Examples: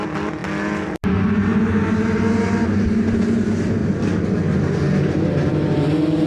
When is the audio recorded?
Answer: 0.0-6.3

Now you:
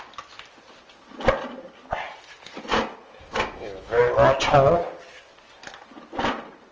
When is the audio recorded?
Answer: 0.0-3.2; 4.0-6.7

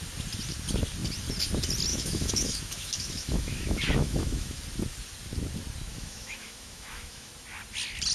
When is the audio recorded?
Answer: 0.0-1.9; 4.6-5.9; 7.3-8.1

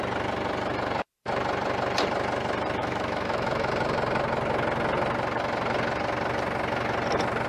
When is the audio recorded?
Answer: 0.0-2.8; 3.7-7.5

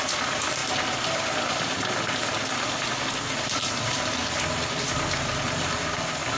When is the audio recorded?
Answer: none

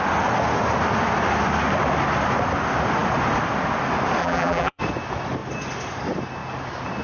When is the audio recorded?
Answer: 0.0-4.2; 4.8-7.0

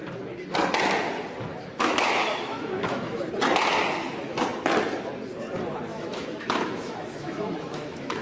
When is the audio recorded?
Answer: 0.0-1.5; 3.3-5.9

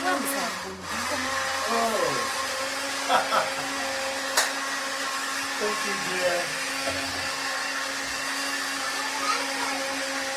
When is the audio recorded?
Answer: 0.0-6.5; 7.1-10.4